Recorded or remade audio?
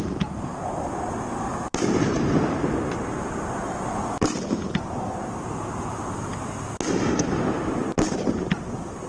recorded